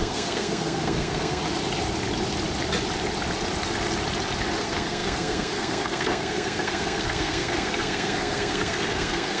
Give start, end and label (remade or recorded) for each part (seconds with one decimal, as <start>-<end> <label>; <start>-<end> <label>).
0.0-1.4 remade; 1.4-4.6 recorded; 4.6-9.4 remade